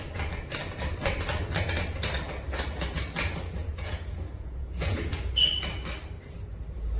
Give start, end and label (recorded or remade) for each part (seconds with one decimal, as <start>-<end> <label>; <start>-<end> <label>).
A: 0.0-3.6 recorded; 3.6-5.1 remade; 5.1-7.0 recorded